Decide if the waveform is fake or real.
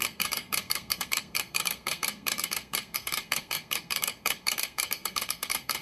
fake